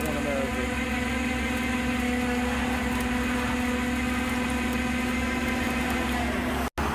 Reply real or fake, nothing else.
real